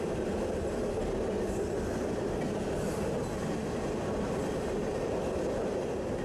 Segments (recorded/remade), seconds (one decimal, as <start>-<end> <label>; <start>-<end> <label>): 0.0-1.0 remade; 1.0-3.2 recorded; 3.2-6.2 remade